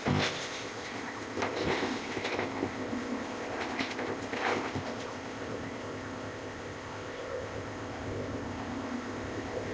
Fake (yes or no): yes